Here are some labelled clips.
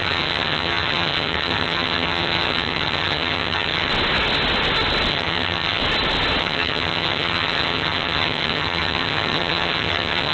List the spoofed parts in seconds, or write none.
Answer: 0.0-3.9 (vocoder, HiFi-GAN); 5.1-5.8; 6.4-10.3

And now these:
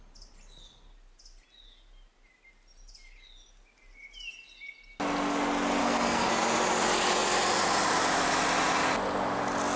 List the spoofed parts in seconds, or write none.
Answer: 5.8-6.3 (codec, SNAC)

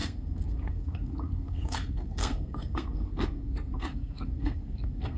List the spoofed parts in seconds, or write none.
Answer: 0.0-5.2 (codec, SNAC)

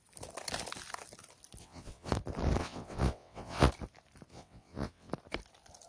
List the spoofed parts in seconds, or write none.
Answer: 1.6-2.1 (vocoder, WaveNeXt); 2.6-3.7; 4.3-5.1

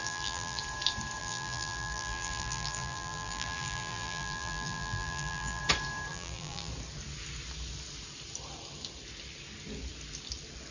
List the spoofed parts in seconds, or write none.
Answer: 0.0-0.6 (vocoder, BigVGAN v2); 1.2-5.6; 6.1-6.7